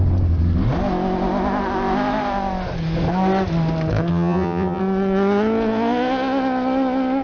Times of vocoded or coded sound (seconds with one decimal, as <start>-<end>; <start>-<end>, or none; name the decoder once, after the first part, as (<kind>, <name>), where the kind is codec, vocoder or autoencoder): 4.1-4.8 (vocoder, HiFi-GAN)